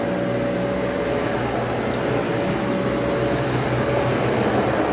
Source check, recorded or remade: recorded